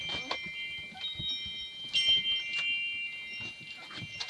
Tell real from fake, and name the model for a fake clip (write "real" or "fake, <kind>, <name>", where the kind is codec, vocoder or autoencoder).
real